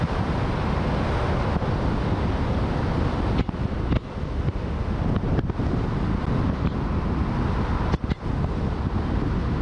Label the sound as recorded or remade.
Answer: recorded